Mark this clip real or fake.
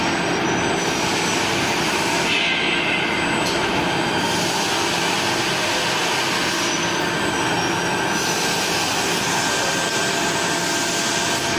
real